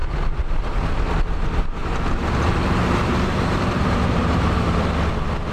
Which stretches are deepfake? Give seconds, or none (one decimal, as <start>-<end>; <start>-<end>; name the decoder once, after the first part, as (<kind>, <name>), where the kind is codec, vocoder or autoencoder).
1.8-4.9 (vocoder, BigVGAN v2)